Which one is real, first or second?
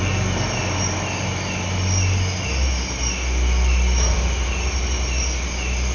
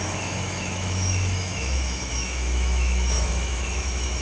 first